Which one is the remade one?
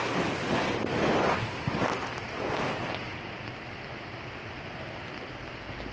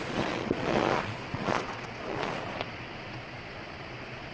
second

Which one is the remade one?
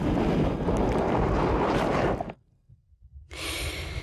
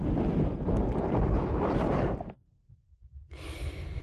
second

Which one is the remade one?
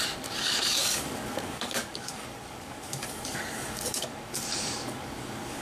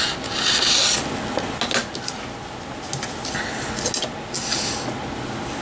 first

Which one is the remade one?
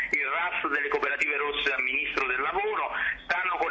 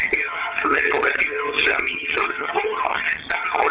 second